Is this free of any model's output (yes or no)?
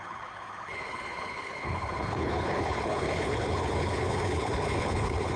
no